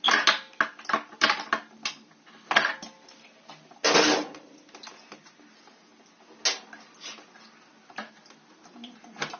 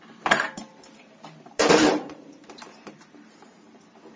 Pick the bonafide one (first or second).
first